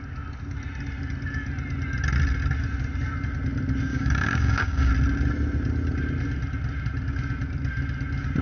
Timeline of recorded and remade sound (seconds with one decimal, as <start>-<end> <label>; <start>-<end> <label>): 0.0-3.9 recorded; 3.9-4.9 remade; 4.9-8.4 recorded